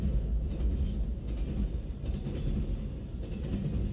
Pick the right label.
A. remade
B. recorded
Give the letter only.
B